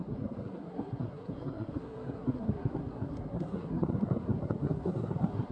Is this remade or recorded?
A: remade